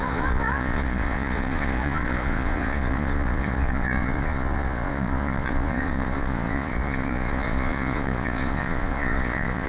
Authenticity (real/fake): fake